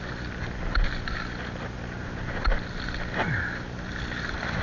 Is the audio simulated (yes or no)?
no